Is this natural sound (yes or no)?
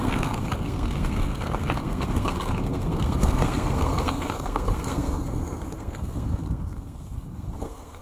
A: no